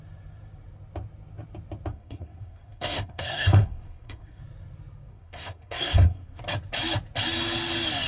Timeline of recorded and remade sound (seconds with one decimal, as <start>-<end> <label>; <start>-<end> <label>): 0.0-1.9 recorded; 1.9-4.4 remade; 4.4-5.1 recorded; 5.1-6.4 remade; 6.4-8.1 recorded